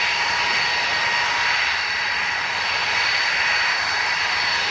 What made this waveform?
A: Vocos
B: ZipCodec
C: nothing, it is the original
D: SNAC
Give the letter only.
C